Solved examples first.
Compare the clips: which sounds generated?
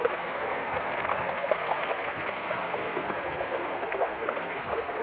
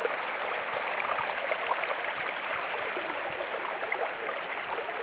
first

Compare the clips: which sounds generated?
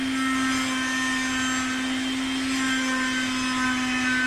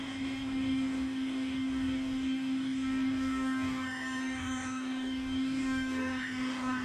second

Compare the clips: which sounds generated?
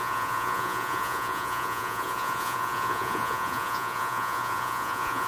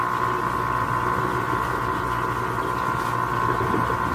first